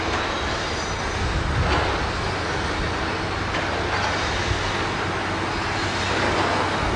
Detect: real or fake real